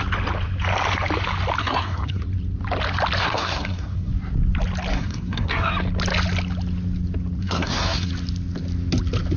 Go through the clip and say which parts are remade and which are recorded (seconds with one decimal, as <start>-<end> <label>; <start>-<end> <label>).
0.0-1.6 recorded; 1.6-2.2 remade; 2.2-3.2 recorded; 3.2-4.1 remade; 4.1-4.9 recorded; 4.9-5.7 remade; 5.7-7.4 recorded; 7.4-8.1 remade; 8.1-9.4 recorded